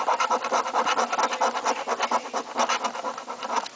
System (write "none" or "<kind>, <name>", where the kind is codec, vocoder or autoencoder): none